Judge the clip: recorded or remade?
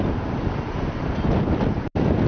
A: recorded